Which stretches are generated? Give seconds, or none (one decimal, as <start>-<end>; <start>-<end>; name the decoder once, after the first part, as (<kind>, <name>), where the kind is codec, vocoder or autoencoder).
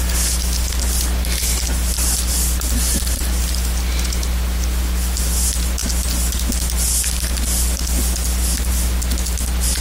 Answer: none